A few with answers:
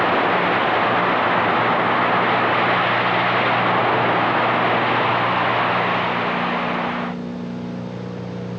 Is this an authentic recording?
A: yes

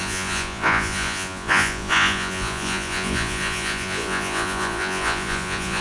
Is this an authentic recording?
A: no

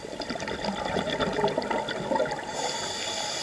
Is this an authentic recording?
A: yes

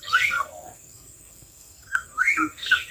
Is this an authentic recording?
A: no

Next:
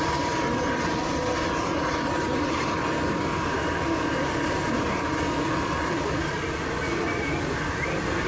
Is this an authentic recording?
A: no